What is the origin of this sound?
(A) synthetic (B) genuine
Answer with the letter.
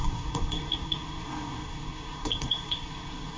A